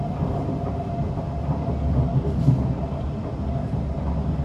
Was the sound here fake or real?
real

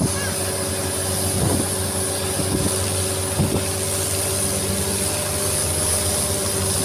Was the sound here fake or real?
real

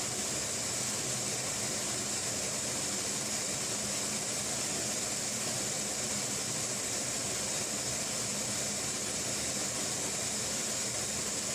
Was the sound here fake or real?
real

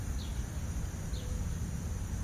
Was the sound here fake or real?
fake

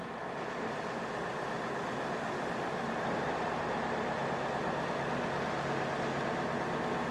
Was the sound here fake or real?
real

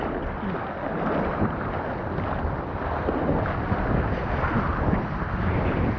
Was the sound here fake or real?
real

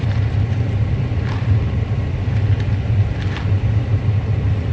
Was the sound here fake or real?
fake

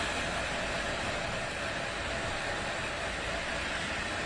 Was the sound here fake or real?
real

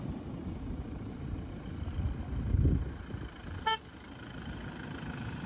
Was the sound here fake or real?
real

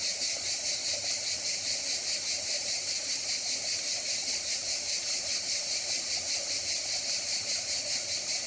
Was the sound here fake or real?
fake